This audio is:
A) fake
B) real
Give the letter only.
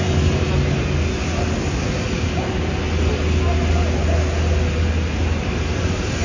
B